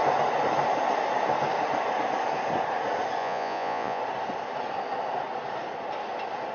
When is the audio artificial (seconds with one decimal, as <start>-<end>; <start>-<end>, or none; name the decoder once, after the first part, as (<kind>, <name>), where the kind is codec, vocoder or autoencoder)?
3.2-4.0 (vocoder, Vocos)